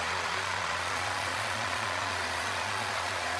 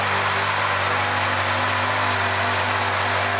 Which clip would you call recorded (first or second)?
second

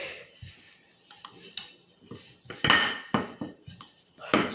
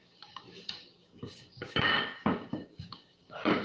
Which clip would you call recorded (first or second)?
first